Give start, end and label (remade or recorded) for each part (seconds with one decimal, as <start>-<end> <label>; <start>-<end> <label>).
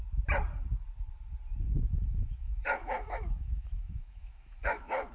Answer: 0.0-1.9 recorded; 1.9-5.1 remade